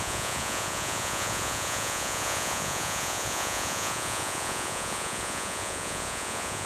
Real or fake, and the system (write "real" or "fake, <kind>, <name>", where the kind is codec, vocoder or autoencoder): fake, vocoder, Vocos